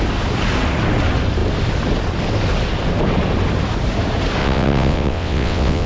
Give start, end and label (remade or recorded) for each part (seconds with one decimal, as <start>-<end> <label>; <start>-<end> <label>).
0.0-4.4 recorded; 4.4-5.9 remade